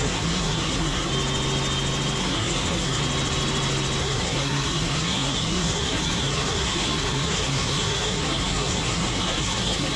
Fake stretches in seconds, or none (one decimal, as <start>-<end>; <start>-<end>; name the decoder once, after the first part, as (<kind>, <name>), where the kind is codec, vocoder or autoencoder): 0.0-1.1 (codec, SNAC); 2.2-3.0; 4.0-10.0